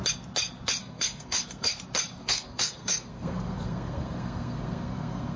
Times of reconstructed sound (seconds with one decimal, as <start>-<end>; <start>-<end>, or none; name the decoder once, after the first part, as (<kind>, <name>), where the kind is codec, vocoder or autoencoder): 0.8-1.7 (codec, SNAC); 2.2-5.4